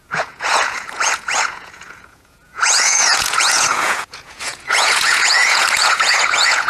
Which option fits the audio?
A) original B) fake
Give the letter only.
B